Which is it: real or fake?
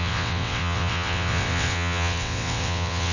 fake